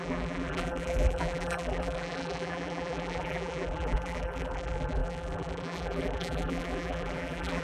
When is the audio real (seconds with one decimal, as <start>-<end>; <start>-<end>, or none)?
none